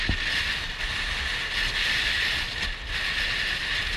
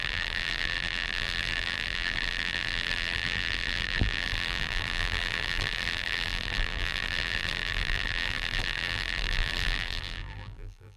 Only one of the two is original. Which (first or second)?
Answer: first